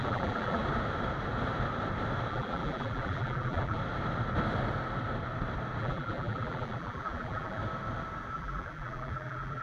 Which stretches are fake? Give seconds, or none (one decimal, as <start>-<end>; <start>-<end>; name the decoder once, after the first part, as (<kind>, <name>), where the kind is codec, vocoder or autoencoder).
0.0-0.6 (vocoder, BigVGAN v2); 2.3-3.8; 5.8-7.6; 8.3-9.6